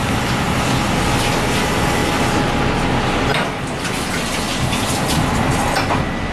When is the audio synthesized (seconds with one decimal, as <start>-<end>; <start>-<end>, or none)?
none